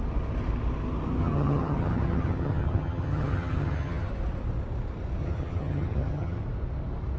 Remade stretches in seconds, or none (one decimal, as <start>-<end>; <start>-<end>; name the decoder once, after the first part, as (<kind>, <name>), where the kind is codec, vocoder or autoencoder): 1.2-4.1 (vocoder, HiFi-GAN); 5.2-6.4